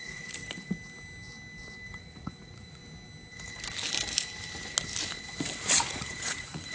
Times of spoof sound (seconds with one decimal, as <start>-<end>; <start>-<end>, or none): 0.0-0.4; 2.0-2.8; 5.8-6.7